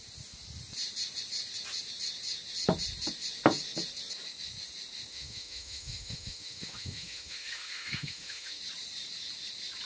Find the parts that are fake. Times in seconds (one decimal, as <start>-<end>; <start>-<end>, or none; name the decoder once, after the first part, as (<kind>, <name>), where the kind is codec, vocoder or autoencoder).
5.1-8.6 (autoencoder, DAC-VAE)